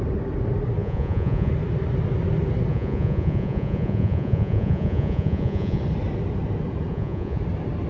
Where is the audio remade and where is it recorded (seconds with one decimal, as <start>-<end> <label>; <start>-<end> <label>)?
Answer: 0.0-0.8 recorded; 0.8-1.5 remade; 1.5-2.7 recorded; 2.7-5.8 remade; 5.8-6.9 recorded; 6.9-7.4 remade; 7.4-7.9 recorded